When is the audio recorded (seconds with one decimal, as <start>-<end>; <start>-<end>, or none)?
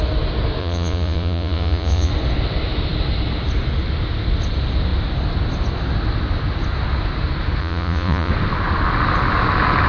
0.0-0.6; 2.1-7.6; 8.3-9.9